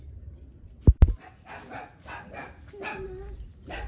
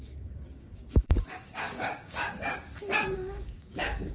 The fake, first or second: second